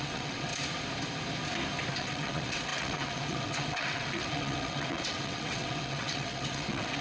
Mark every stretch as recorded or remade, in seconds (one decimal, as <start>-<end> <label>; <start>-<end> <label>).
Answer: 0.0-0.5 remade; 0.5-1.9 recorded; 1.9-7.0 remade